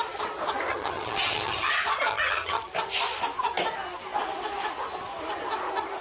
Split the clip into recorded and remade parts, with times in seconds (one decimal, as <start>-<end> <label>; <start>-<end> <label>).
0.0-0.7 recorded; 0.7-1.7 remade; 1.7-2.1 recorded; 2.1-2.7 remade; 2.7-6.0 recorded